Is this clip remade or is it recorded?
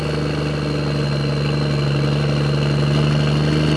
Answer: recorded